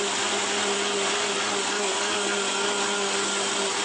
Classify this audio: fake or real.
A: real